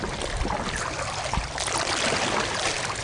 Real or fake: real